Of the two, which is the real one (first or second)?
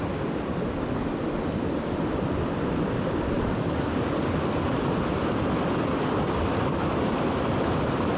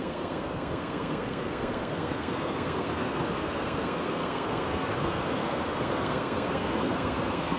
first